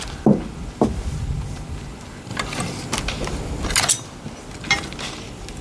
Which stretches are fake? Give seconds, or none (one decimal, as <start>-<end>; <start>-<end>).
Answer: none